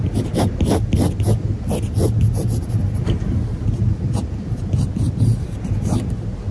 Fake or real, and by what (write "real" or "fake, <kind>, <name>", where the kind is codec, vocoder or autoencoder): real